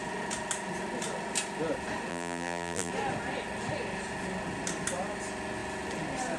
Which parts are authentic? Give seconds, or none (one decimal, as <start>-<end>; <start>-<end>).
0.0-2.1; 2.9-6.4

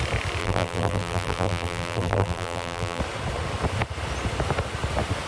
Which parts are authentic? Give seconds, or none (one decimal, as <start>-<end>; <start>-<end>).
0.0-0.4; 3.0-5.3

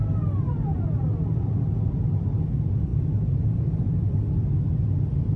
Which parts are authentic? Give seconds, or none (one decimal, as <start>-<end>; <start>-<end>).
0.0-2.9; 3.8-5.4

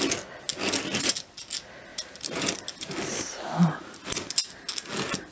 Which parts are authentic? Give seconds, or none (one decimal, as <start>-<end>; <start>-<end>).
0.0-5.3